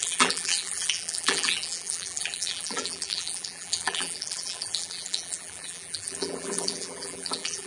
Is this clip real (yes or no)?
no